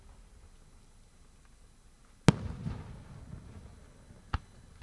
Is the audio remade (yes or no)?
no